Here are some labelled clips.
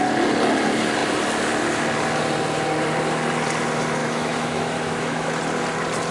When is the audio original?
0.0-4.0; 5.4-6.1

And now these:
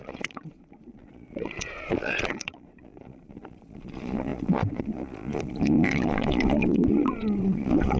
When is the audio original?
none

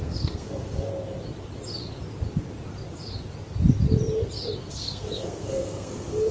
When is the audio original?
0.9-4.7

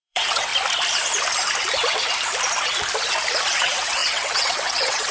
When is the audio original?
0.5-3.6

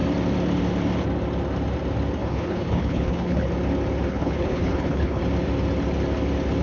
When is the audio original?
0.0-2.2; 3.5-4.1; 5.2-6.6